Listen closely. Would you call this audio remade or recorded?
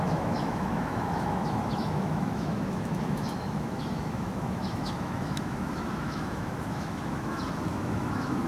remade